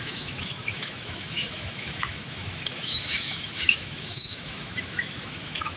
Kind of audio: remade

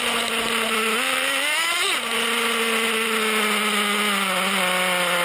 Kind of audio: recorded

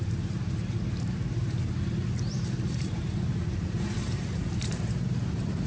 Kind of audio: remade